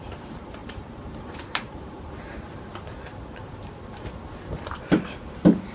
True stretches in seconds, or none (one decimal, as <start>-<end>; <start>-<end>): 2.7-5.7